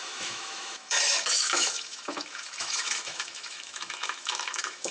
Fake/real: fake